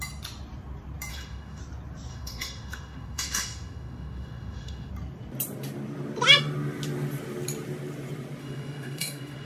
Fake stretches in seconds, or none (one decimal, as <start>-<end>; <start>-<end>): 1.1-1.6; 2.1-4.9; 8.4-9.5